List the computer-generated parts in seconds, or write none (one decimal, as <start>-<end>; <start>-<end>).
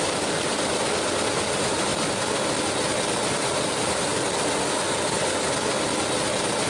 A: none